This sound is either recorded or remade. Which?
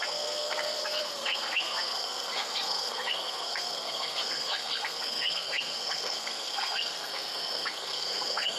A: remade